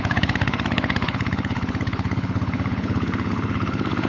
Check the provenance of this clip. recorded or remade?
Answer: remade